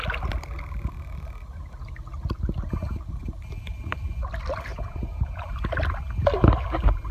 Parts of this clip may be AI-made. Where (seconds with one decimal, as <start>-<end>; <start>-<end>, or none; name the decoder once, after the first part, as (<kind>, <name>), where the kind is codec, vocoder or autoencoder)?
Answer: 4.7-5.4 (vocoder, Vocos)